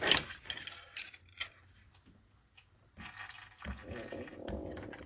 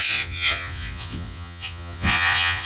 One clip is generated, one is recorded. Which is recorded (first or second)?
first